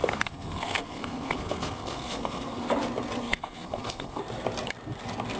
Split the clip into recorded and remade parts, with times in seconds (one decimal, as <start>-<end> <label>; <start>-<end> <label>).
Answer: 0.0-2.7 remade; 2.7-3.2 recorded; 3.2-4.2 remade; 4.2-5.4 recorded